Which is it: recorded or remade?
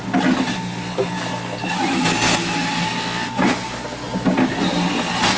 recorded